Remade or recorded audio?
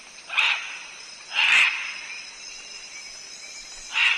recorded